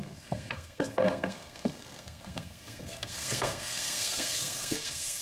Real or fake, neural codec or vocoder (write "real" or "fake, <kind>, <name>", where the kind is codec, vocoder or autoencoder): fake, codec, SNAC